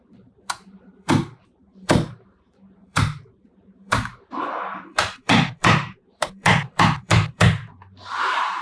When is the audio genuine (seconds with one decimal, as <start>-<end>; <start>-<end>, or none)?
none